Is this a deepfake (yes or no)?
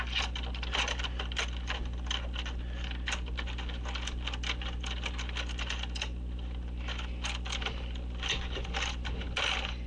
no